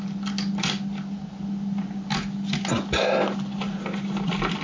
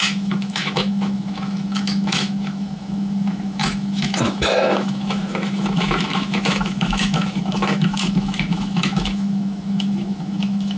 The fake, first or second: second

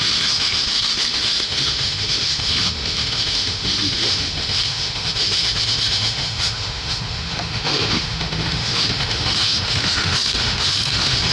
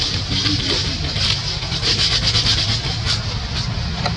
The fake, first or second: first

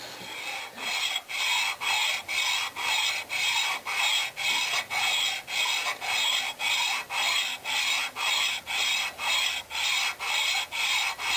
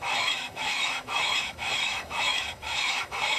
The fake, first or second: second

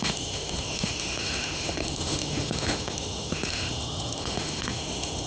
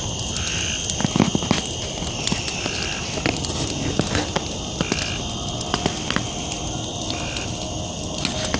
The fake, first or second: first